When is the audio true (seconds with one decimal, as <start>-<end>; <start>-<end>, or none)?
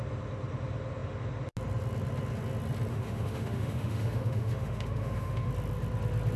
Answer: 0.0-2.9; 5.5-6.4